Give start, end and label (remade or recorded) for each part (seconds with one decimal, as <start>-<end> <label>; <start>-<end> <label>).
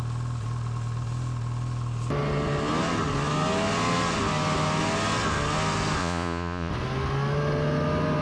0.0-6.0 recorded; 6.0-6.7 remade; 6.7-8.2 recorded